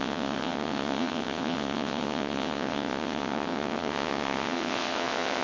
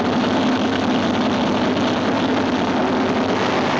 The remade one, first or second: first